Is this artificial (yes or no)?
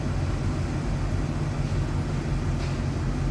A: no